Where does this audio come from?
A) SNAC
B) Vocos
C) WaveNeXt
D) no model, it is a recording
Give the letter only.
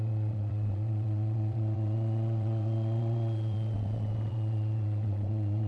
C